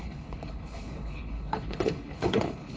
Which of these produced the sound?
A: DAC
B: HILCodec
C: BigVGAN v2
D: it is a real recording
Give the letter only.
B